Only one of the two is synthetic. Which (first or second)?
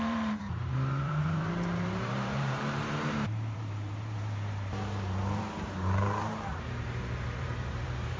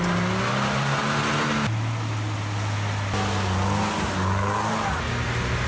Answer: first